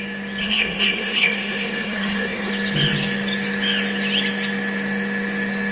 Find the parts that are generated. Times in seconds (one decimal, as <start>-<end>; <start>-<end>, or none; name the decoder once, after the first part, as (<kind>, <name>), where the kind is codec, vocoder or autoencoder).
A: 0.4-2.5 (codec, SNAC)